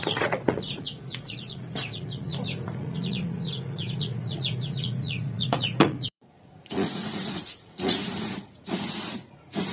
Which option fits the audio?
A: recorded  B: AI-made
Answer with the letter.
B